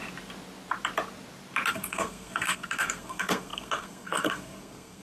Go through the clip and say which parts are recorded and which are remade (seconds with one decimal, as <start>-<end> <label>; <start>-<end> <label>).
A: 0.0-1.7 recorded; 1.7-5.0 remade